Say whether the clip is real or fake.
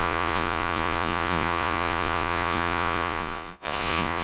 fake